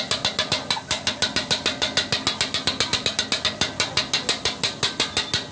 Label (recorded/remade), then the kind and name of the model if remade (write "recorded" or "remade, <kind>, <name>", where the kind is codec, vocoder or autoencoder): recorded